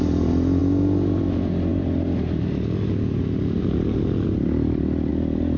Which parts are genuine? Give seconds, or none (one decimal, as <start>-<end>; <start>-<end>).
0.0-5.6